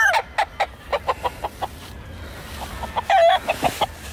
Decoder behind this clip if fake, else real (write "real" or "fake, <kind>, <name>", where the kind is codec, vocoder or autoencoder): real